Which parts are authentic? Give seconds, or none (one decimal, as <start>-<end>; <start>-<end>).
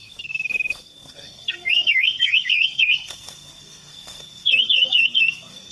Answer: none